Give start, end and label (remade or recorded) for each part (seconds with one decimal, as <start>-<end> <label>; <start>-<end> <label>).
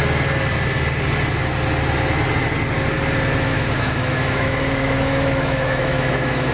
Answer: 0.0-3.5 recorded; 3.5-6.5 remade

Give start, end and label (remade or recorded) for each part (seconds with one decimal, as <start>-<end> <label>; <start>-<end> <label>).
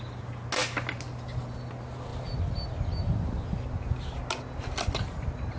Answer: 0.0-5.6 recorded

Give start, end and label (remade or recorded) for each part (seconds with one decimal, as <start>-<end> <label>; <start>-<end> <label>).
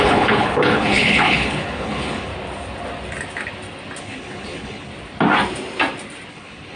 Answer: 0.0-2.3 remade; 2.3-4.0 recorded; 4.0-4.9 remade; 4.9-6.3 recorded; 6.3-6.8 remade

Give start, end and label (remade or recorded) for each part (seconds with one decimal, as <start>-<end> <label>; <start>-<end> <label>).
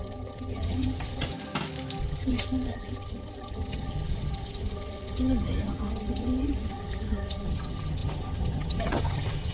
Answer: 0.0-1.3 remade; 1.3-2.0 recorded; 2.0-9.5 remade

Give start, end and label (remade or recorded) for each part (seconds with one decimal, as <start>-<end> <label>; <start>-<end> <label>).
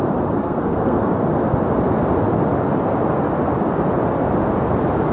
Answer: 0.0-0.4 recorded; 0.4-1.1 remade; 1.1-5.1 recorded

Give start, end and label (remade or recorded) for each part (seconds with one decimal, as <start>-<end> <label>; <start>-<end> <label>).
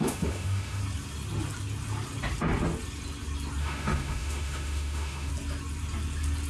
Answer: 0.0-0.8 remade; 0.8-3.6 recorded; 3.6-5.3 remade; 5.3-6.5 recorded